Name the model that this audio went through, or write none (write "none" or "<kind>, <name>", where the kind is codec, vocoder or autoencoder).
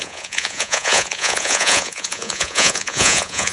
vocoder, Vocos